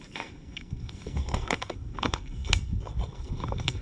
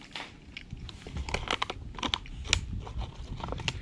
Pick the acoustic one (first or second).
second